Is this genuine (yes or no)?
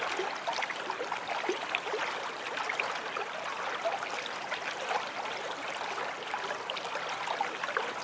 yes